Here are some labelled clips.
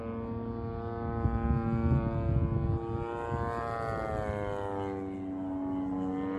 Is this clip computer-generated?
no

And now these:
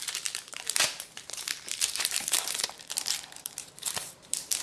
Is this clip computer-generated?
yes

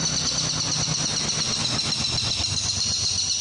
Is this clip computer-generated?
no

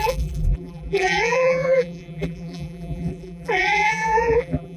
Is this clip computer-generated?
yes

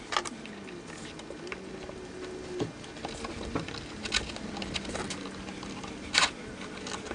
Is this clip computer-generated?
no